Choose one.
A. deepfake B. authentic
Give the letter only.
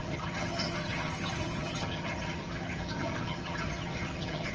A